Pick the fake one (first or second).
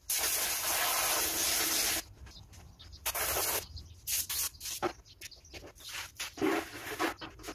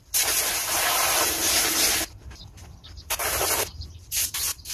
second